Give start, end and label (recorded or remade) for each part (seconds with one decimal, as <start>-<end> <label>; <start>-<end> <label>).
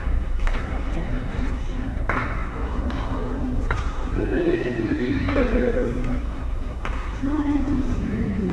0.0-8.5 remade